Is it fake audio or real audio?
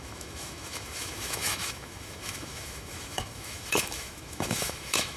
fake